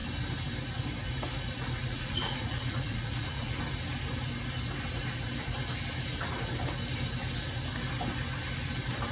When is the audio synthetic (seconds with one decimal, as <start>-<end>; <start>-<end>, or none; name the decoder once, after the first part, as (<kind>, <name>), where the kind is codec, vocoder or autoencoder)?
1.8-3.6 (vocoder, Vocos)